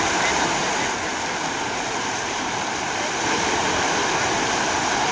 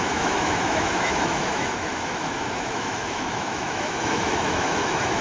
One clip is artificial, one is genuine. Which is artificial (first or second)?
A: second